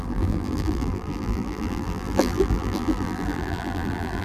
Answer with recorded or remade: remade